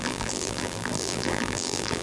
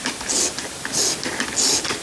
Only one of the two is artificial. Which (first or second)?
first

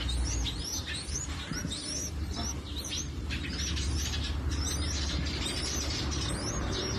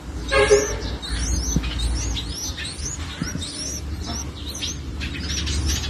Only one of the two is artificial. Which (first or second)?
first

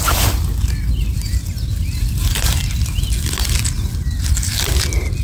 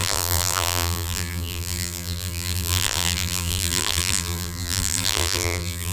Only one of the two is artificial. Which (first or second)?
second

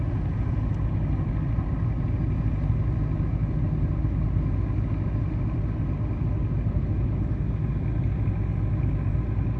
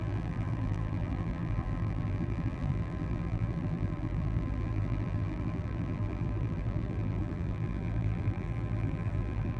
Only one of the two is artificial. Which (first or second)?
second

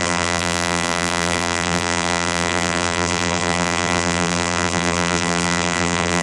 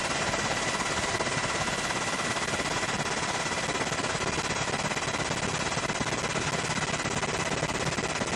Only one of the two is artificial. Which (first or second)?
first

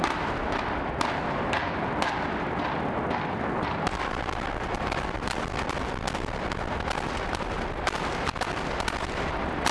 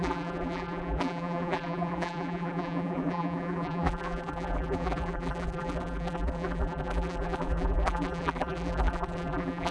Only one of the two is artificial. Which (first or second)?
second